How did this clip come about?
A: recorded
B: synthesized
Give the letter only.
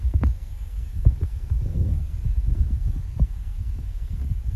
B